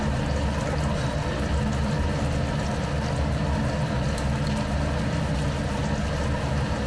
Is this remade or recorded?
recorded